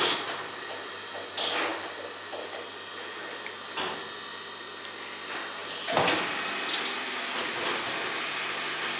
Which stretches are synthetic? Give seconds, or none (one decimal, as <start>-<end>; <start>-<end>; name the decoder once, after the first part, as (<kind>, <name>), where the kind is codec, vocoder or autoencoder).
none